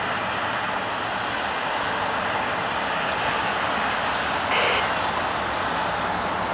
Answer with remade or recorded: recorded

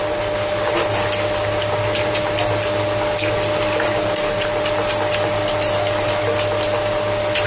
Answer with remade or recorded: recorded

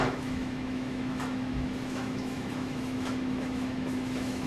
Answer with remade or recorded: remade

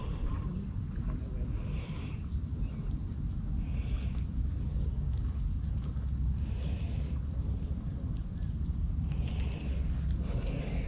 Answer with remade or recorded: recorded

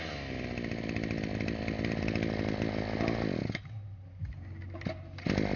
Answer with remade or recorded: recorded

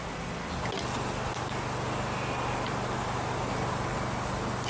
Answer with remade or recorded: recorded